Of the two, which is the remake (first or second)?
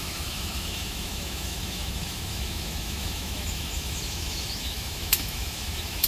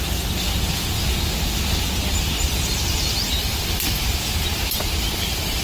first